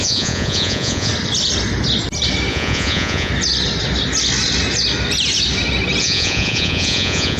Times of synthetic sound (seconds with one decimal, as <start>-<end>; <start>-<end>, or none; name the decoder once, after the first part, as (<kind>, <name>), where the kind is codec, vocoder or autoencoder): 0.0-1.1 (vocoder, Vocos); 2.5-3.3; 6.0-7.4